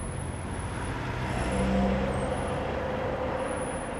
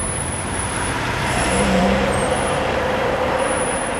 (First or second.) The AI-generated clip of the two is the second